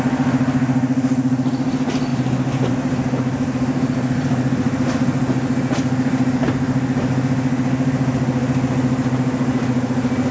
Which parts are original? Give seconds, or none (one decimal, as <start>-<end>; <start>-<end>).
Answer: 0.0-10.3